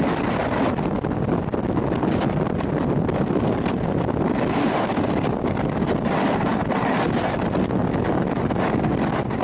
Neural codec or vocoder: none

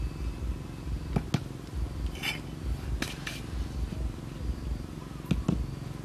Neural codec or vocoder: none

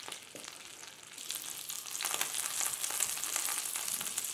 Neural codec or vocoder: none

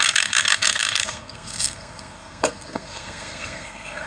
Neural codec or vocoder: codec, SNAC